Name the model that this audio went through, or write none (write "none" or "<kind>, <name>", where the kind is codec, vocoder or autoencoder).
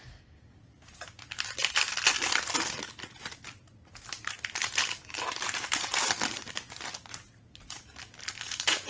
none